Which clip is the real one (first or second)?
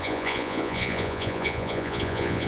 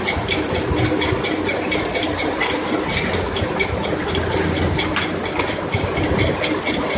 second